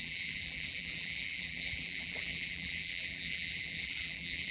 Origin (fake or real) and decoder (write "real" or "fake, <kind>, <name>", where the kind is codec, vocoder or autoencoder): fake, vocoder, BigVGAN v2